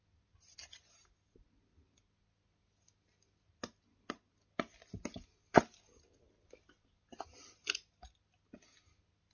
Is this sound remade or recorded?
recorded